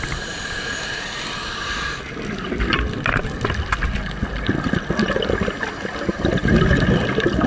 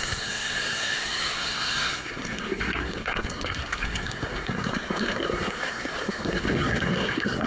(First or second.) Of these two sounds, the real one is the first